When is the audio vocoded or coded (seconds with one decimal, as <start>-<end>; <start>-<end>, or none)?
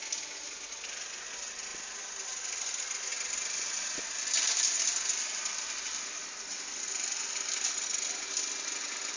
none